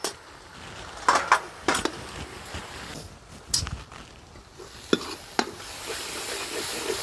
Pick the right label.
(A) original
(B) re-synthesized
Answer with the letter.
A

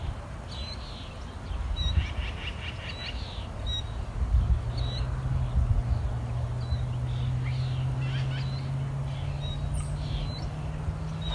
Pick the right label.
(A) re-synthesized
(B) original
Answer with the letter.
B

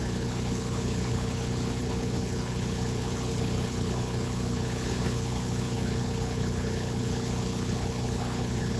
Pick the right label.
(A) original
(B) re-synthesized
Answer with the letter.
B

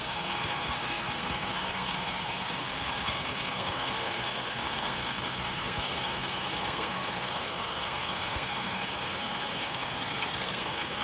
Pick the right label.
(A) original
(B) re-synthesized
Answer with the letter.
B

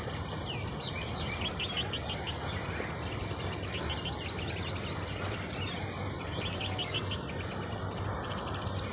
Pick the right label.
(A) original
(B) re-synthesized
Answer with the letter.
A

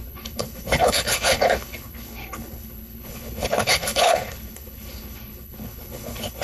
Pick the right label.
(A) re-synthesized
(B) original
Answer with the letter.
A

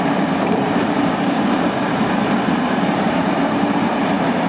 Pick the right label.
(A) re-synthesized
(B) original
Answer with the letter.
A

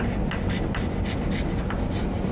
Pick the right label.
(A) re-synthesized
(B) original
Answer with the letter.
B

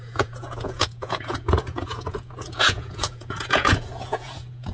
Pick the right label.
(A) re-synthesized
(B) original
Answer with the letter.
A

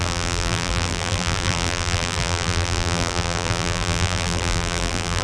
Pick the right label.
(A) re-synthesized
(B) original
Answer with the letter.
A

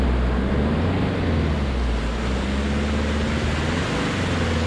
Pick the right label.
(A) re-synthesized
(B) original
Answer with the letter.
B